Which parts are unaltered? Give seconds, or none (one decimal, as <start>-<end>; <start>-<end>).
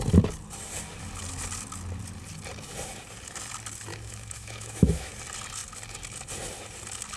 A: 0.0-3.9; 5.1-7.2